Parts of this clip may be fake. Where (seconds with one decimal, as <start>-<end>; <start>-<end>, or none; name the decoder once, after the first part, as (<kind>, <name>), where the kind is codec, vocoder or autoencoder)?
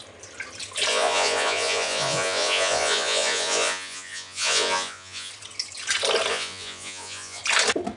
0.9-5.3 (vocoder, Vocos); 6.3-7.4